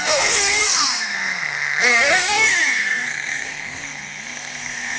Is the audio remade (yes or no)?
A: yes